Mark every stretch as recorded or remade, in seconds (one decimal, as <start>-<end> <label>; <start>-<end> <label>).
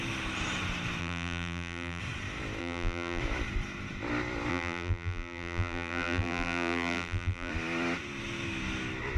0.0-1.0 recorded; 1.0-2.0 remade; 2.0-2.6 recorded; 2.6-3.2 remade; 3.2-4.5 recorded; 4.5-7.5 remade; 7.5-9.2 recorded